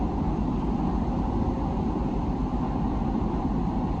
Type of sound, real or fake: real